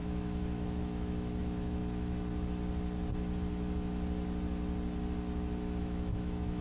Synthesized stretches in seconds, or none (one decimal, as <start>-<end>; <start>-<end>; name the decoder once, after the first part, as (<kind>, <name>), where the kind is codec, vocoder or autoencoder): 0.0-1.8 (autoencoder, DAC-VAE); 5.8-6.6